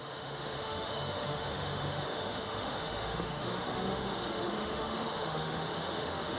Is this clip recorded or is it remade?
remade